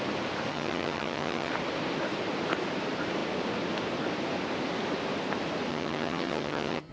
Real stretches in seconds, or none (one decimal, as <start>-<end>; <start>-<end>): 0.0-0.5; 1.5-5.7